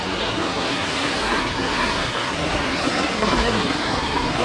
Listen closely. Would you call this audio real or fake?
fake